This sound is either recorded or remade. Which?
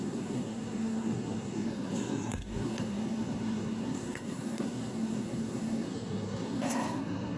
remade